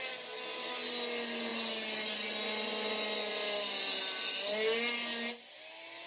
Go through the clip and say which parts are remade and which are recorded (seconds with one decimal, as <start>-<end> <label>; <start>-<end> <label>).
0.0-6.1 recorded